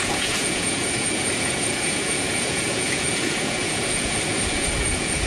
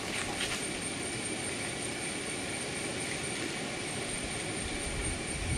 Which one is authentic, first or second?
second